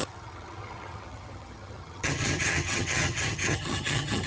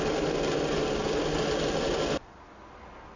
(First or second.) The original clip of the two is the second